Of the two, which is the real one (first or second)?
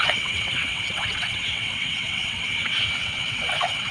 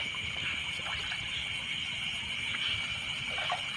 second